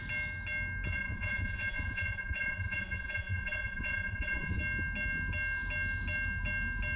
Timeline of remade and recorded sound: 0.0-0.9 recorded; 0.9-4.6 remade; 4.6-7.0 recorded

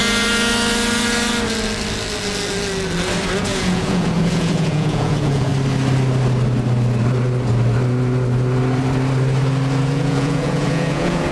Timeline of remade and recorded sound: 0.0-3.4 recorded; 3.4-5.5 remade; 5.5-9.9 recorded; 9.9-11.3 remade